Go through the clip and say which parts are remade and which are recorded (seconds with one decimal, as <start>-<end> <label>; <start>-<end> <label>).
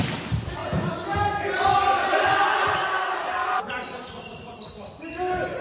0.0-5.6 recorded